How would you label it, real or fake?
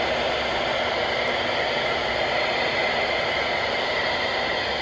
real